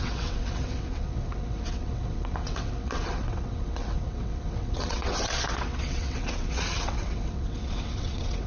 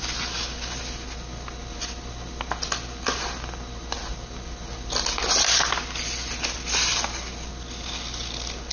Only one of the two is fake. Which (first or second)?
first